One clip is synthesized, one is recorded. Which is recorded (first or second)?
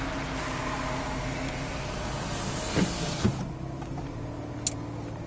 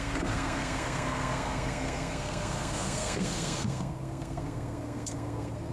first